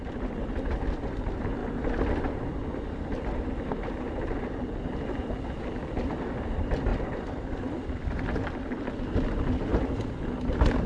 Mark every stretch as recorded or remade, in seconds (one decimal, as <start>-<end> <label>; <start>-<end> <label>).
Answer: 0.0-1.6 remade; 1.6-2.1 recorded; 2.1-10.9 remade